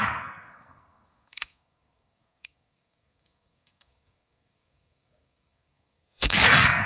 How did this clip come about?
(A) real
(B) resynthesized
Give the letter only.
B